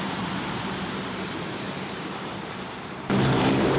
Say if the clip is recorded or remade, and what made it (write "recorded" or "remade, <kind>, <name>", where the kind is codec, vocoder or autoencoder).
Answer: remade, vocoder, BigVGAN v2